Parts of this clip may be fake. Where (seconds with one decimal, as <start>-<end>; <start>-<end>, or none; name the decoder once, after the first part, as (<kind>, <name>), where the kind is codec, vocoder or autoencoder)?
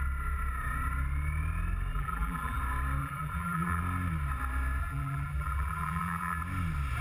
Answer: 1.9-2.6 (vocoder, BigVGAN v2); 3.0-3.8; 4.8-6.4